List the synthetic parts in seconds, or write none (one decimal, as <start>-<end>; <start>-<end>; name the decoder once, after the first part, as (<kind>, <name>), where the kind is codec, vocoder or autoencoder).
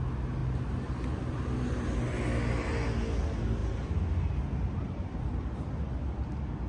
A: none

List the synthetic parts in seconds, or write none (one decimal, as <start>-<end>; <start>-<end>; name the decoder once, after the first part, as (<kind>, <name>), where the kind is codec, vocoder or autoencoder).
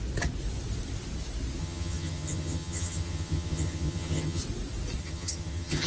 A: 1.6-4.4 (vocoder, HiFi-GAN); 5.0-5.9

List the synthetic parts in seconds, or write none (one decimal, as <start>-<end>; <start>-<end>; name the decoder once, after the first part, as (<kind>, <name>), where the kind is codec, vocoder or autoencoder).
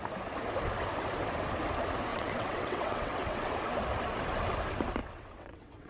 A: 2.1-3.5 (vocoder, WaveNeXt); 5.0-5.9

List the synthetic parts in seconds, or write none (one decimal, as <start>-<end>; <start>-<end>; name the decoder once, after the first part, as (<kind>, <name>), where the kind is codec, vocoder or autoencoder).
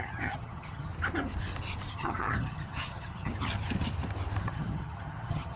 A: 0.0-0.9 (vocoder, HiFi-GAN); 1.9-3.3; 4.4-5.6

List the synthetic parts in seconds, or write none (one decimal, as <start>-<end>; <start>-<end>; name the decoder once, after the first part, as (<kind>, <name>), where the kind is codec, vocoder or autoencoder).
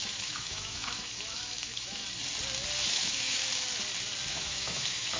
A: 0.0-2.0 (autoencoder, DAC-VAE); 2.9-3.4; 4.3-5.2